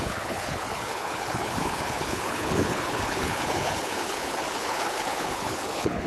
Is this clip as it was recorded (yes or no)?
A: no